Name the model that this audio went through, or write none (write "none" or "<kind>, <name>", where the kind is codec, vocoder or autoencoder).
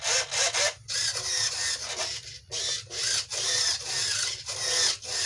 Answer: none